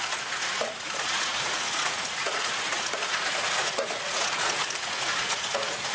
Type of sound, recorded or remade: remade